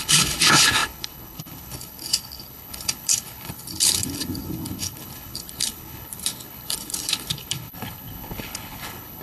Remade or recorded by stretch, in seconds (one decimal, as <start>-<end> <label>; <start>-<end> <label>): 0.0-9.2 remade